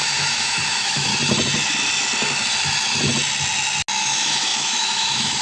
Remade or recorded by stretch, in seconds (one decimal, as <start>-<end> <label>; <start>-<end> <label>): 0.0-1.1 remade; 1.1-4.0 recorded; 4.0-5.4 remade